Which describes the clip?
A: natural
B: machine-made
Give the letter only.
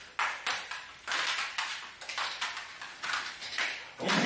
A